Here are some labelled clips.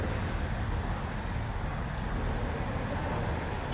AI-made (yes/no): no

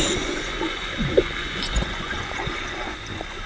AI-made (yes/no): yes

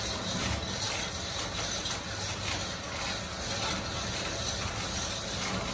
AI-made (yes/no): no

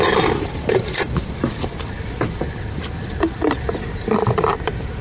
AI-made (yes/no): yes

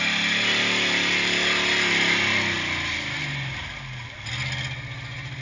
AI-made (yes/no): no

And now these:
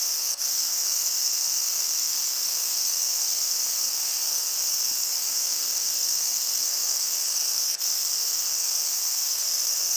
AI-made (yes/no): yes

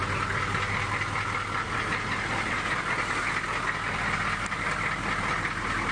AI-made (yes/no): no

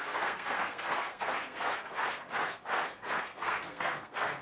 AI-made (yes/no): yes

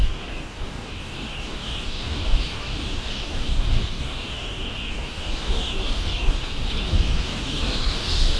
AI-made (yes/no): yes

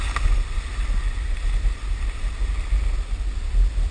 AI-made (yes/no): no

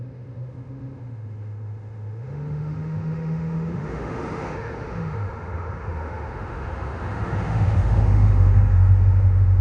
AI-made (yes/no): yes